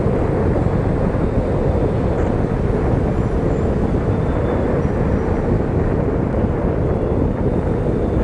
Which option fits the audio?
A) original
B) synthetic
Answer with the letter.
A